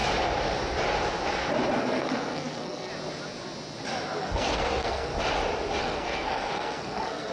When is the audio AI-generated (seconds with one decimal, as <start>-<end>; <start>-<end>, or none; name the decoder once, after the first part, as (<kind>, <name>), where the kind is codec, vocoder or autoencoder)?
1.8-2.9 (codec, SNAC); 4.2-5.1; 5.8-7.3